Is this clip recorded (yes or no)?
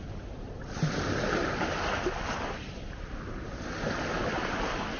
yes